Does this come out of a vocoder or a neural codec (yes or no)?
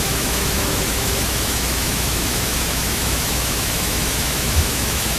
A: yes